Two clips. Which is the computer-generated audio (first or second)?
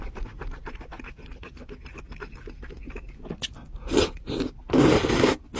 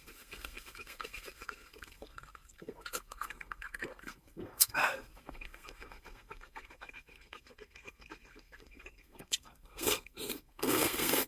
second